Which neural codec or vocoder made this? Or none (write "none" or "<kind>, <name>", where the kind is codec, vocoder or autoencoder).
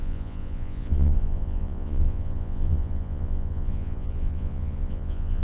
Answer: vocoder, Vocos